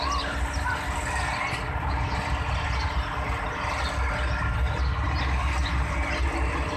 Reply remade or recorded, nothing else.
recorded